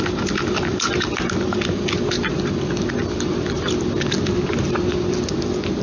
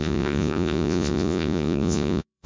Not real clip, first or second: second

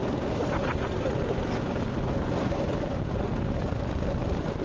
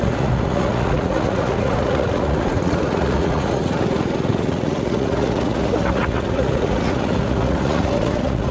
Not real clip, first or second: second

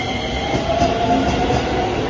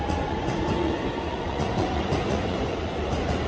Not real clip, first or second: second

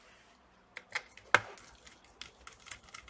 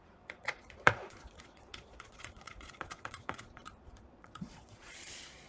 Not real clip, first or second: second